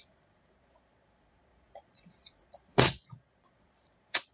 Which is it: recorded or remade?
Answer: remade